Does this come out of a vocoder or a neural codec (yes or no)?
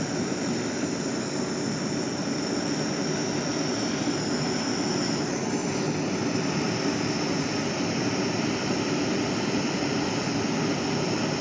no